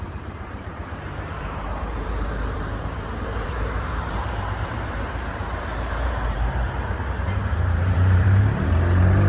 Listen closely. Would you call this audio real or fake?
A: fake